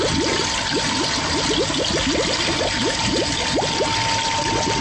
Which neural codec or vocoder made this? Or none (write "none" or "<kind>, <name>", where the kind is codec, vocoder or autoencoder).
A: none